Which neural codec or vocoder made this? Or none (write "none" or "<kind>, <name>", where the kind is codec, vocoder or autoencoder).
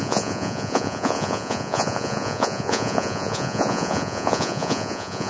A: vocoder, Vocos